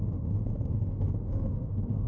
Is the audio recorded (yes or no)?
no